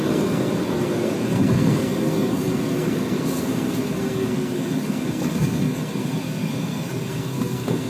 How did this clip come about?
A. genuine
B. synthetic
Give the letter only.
B